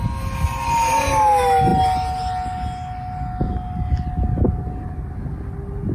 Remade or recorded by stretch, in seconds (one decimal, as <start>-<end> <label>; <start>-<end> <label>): 0.0-5.9 recorded